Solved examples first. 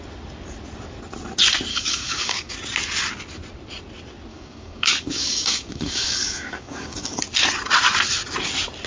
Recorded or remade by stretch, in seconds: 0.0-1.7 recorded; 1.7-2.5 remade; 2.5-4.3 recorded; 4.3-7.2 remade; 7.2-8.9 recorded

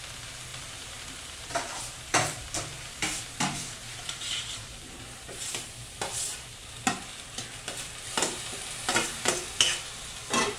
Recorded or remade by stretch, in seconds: 0.0-0.5 recorded; 0.5-5.5 remade; 5.5-6.3 recorded; 6.3-9.3 remade; 9.3-10.6 recorded